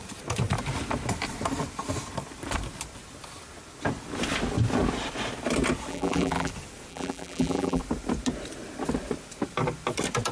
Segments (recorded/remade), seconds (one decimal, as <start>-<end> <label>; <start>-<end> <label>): 0.0-5.9 recorded; 5.9-6.5 remade; 6.5-6.9 recorded; 6.9-7.8 remade; 7.8-10.3 recorded